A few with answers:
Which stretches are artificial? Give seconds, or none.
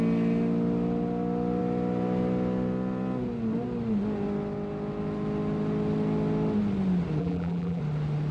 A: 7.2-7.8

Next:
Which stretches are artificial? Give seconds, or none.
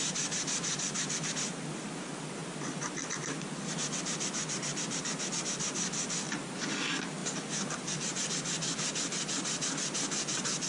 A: 7.2-8.3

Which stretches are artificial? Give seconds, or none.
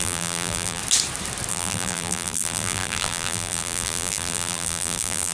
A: 0.0-0.8; 1.5-5.3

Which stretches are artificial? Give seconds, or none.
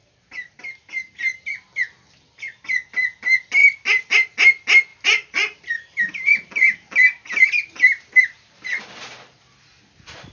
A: 0.0-1.2; 3.6-4.1; 4.9-8.8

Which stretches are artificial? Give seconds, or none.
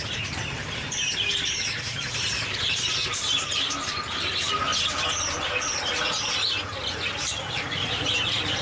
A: 0.0-4.7; 7.2-8.6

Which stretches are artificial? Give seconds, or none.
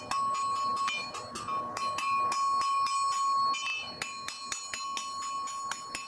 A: none